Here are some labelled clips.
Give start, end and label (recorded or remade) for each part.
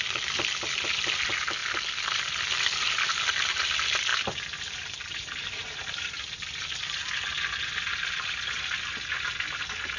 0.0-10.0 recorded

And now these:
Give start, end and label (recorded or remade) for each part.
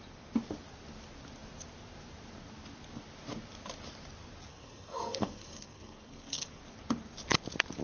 0.0-4.5 recorded; 4.5-6.6 remade; 6.6-7.8 recorded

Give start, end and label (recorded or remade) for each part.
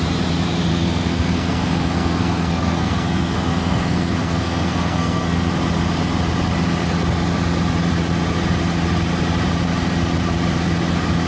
0.0-0.7 recorded; 0.7-5.5 remade; 5.5-11.3 recorded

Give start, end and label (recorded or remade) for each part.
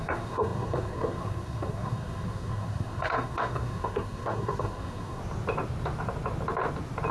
0.0-5.2 remade; 5.2-7.1 recorded